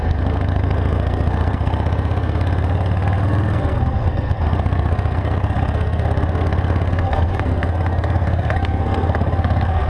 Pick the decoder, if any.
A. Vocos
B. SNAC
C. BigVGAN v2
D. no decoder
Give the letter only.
B